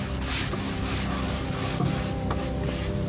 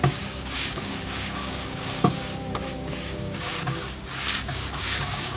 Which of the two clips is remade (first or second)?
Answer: second